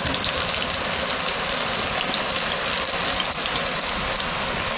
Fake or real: real